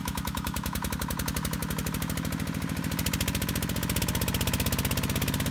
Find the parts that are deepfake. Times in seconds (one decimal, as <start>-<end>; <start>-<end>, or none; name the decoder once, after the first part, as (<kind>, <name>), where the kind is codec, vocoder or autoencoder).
0.0-0.9 (autoencoder, DAC-VAE)